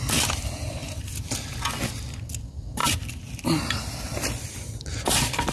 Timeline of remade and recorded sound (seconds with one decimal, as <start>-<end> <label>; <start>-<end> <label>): 0.0-0.8 recorded; 0.8-1.7 remade; 1.7-2.8 recorded; 2.8-3.6 remade; 3.6-4.9 recorded; 4.9-5.5 remade